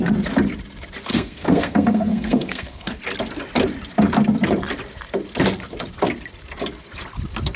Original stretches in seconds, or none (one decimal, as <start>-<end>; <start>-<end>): 0.0-1.1; 3.0-7.6